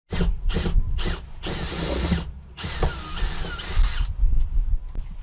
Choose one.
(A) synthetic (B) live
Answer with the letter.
B